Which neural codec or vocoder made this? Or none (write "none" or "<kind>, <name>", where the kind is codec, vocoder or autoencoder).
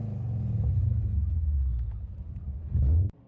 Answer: none